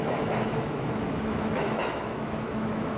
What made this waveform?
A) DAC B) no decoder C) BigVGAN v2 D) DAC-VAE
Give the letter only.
D